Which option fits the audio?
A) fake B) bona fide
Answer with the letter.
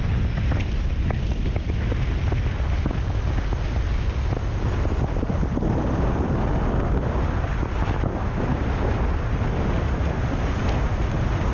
B